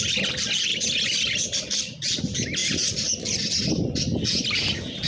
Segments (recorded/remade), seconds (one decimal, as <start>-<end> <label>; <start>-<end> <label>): 0.0-0.7 recorded; 0.7-2.1 remade; 2.1-2.6 recorded; 2.6-4.0 remade; 4.0-5.1 recorded